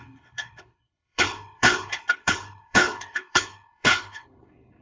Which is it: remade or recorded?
remade